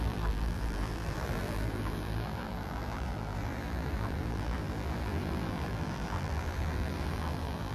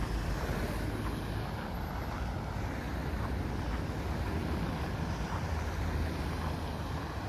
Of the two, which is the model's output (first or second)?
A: first